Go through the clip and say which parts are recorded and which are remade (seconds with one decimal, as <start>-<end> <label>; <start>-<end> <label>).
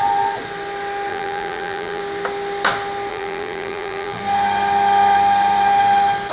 0.0-1.1 recorded; 1.1-2.0 remade; 2.0-3.1 recorded; 3.1-4.2 remade; 4.2-6.3 recorded